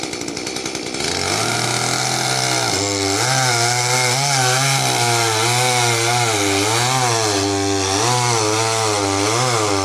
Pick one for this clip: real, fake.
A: real